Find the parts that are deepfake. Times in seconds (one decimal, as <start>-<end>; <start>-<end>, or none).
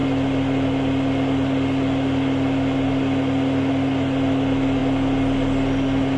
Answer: none